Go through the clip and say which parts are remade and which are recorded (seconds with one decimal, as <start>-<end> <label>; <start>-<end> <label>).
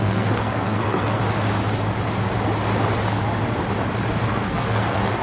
0.0-1.2 remade; 1.2-4.3 recorded; 4.3-5.2 remade